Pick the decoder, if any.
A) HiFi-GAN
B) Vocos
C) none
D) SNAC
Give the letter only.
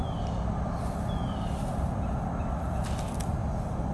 C